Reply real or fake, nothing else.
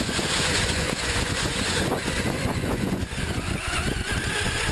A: fake